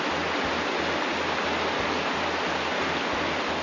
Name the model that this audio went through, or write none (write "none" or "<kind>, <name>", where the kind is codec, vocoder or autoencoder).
none